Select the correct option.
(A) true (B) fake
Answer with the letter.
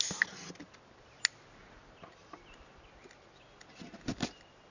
A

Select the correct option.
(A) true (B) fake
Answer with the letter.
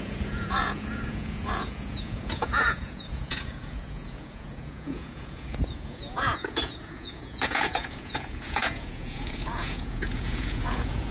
B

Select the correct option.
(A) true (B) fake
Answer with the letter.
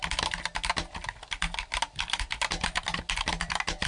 A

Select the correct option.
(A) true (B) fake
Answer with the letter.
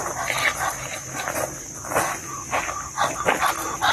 A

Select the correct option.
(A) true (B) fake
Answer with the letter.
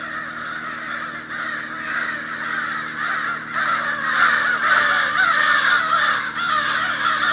A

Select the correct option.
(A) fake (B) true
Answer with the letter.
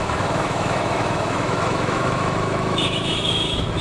A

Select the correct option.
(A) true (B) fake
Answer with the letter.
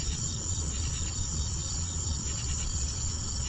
B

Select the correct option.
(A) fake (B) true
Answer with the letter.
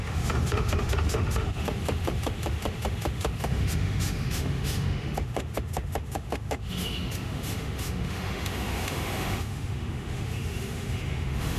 A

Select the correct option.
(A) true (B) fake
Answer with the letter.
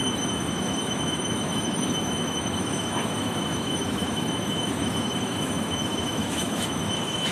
B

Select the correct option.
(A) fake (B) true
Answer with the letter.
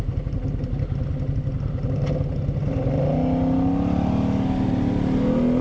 B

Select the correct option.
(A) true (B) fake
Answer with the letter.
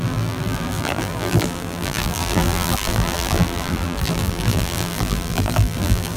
B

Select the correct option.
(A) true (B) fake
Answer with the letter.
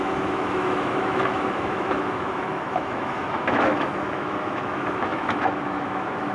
B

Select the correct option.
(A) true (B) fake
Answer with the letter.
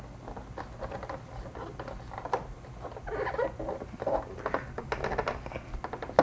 A